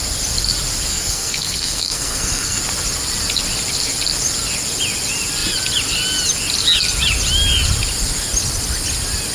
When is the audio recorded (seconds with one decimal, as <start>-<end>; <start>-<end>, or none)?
0.0-0.9; 2.6-9.3